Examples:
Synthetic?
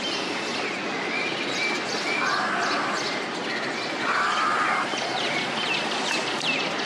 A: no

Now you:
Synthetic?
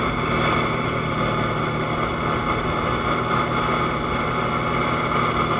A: no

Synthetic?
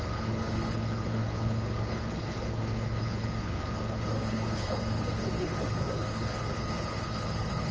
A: yes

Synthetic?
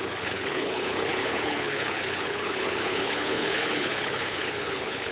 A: yes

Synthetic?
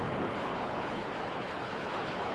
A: yes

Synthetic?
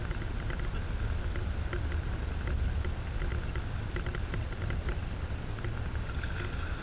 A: no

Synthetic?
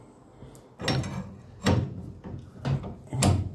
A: no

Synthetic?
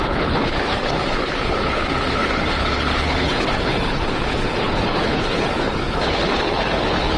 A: yes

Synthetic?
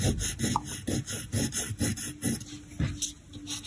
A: no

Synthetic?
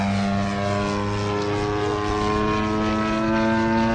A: no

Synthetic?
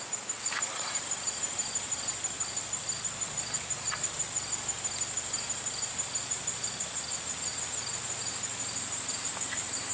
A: no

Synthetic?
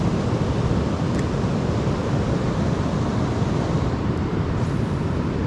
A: no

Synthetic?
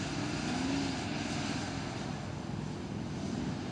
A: no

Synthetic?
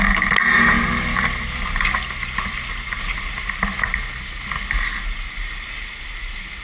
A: no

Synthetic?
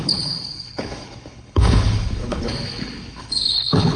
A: yes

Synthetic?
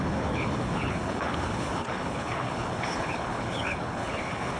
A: yes